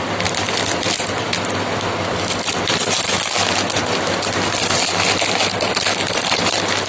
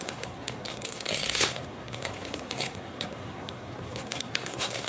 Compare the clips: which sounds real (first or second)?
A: first